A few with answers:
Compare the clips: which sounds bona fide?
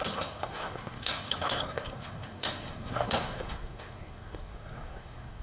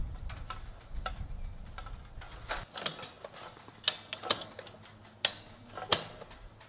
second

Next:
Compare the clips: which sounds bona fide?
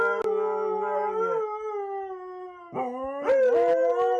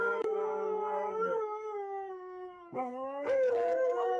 first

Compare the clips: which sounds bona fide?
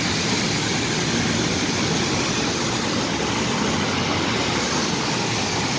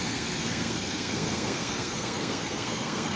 first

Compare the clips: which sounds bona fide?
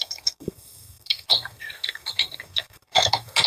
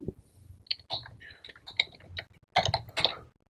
second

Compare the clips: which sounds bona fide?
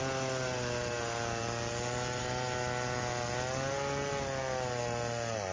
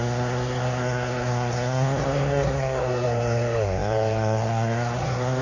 first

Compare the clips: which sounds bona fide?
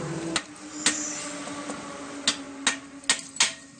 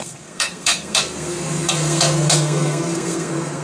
first